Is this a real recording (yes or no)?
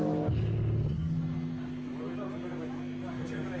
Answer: yes